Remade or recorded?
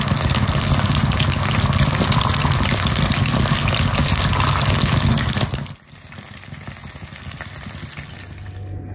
recorded